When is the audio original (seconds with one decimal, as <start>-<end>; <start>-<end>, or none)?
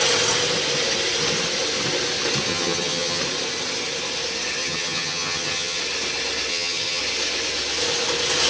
0.0-2.5; 3.2-4.6; 5.8-6.5; 7.0-8.5